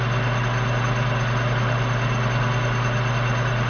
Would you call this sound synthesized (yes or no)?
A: no